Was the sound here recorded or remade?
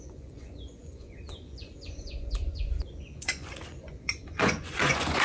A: remade